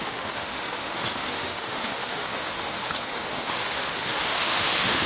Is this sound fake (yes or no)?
yes